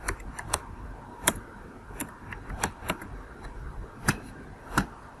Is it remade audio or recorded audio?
remade